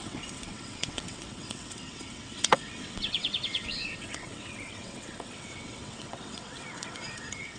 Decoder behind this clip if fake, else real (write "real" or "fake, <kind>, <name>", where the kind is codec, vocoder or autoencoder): fake, vocoder, WaveNeXt